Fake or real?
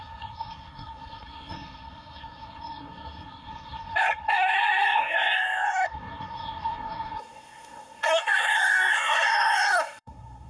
fake